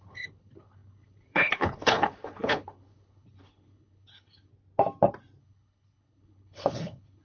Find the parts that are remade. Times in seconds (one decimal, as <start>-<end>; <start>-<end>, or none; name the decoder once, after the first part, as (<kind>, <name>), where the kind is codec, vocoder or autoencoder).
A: 0.0-4.5 (codec, HILCodec); 5.4-7.2